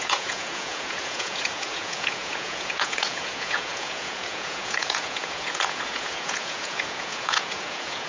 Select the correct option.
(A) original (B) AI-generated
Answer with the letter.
B